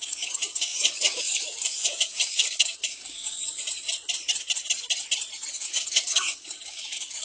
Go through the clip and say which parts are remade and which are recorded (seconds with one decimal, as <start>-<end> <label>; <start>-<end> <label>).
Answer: 0.0-3.6 remade; 3.6-5.5 recorded; 5.5-7.2 remade